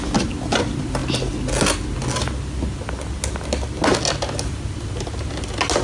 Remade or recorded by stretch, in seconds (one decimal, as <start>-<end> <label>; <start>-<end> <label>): 0.0-5.8 recorded